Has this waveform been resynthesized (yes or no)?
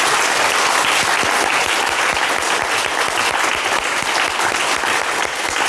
no